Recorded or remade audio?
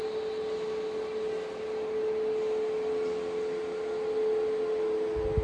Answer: recorded